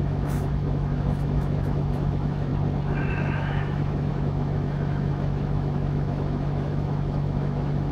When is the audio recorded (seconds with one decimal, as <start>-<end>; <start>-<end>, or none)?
2.5-3.1